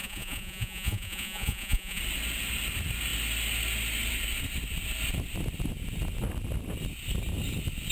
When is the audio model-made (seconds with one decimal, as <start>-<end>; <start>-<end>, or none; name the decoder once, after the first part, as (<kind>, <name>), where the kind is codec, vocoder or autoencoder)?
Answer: 0.0-2.0 (vocoder, Vocos)